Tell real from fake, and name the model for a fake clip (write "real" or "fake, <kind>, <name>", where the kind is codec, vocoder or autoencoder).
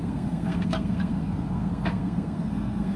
fake, codec, SNAC